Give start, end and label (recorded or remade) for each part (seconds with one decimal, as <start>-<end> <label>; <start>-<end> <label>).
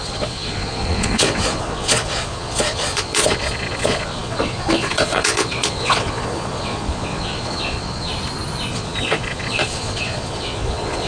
0.0-8.1 remade; 8.1-8.7 recorded; 8.7-11.1 remade